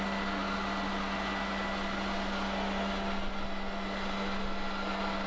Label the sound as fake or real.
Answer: real